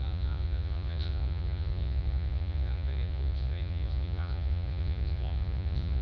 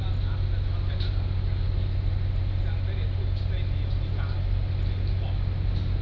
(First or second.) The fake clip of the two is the first